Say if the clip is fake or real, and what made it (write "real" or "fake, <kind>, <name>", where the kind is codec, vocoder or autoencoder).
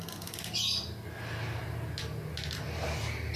real